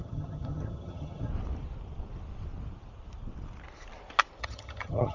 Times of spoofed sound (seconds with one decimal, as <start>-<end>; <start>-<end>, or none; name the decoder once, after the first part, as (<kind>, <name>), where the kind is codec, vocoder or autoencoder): 0.0-1.3 (vocoder, HiFi-GAN); 4.4-5.1